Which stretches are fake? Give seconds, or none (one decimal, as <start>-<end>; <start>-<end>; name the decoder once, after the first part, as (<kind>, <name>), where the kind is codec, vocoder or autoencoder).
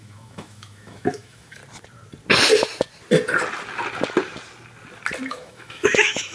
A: 0.0-1.6 (autoencoder, DAC-VAE); 5.3-6.3